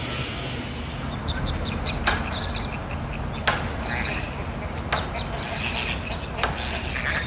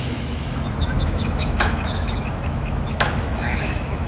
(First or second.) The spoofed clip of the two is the second